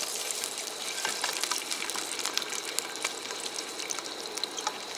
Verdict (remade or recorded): remade